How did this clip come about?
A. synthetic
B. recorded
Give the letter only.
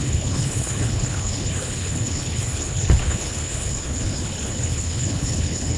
A